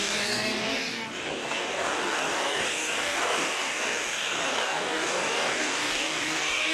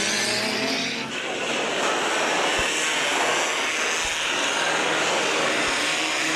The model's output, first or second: first